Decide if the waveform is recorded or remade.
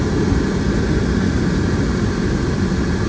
recorded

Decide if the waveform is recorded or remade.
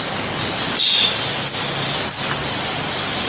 recorded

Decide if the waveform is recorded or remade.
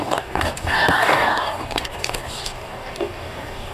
remade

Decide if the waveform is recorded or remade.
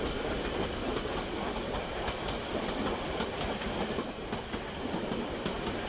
recorded